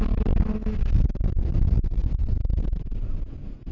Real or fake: real